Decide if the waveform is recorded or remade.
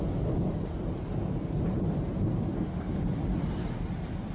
recorded